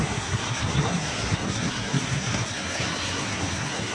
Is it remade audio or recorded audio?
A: remade